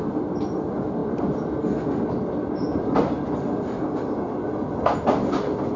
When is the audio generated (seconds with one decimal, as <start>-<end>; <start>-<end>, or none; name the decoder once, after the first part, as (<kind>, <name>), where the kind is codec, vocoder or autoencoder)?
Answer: none

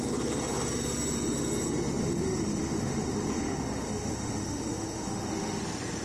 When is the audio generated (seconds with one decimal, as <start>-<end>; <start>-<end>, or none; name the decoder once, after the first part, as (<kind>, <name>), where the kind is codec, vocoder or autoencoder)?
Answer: 2.0-5.6 (autoencoder, DAC-VAE)

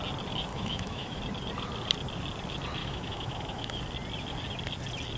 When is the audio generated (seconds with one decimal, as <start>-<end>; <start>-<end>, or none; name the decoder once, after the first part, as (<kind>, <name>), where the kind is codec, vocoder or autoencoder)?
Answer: 0.5-1.2 (autoencoder, DAC-VAE); 2.8-3.8

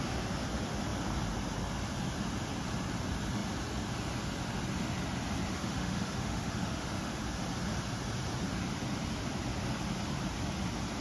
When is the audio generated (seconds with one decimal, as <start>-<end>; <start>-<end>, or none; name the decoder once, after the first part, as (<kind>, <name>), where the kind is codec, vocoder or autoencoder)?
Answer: 5.5-7.2 (autoencoder, DAC-VAE)

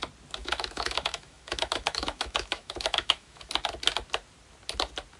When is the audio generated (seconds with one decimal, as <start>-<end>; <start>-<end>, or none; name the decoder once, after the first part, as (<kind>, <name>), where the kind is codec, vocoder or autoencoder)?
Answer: 0.4-3.5 (autoencoder, DAC-VAE)

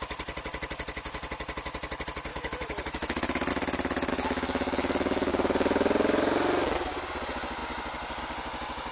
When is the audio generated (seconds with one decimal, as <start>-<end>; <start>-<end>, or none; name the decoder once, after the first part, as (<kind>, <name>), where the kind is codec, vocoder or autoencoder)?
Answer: 2.3-3.5 (autoencoder, DAC-VAE); 4.1-5.3